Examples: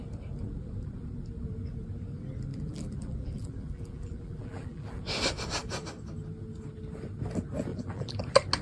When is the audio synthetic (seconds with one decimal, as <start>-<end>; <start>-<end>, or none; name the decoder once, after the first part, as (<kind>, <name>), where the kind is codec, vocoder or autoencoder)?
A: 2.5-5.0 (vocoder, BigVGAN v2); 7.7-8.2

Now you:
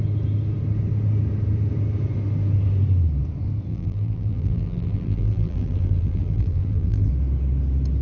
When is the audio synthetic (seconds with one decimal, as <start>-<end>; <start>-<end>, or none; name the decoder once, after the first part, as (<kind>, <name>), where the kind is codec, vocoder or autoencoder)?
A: 3.7-7.1 (vocoder, BigVGAN v2)

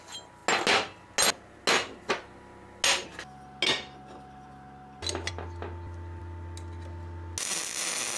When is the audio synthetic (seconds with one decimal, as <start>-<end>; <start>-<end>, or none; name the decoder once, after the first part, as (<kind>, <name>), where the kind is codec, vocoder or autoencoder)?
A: none

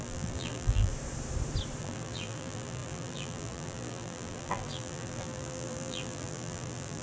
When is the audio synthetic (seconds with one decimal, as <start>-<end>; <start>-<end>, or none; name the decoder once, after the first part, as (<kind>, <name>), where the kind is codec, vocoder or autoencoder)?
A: 0.0-0.9 (vocoder, BigVGAN v2); 1.8-7.0